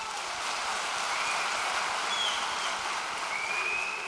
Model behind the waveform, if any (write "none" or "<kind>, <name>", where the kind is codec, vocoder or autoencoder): none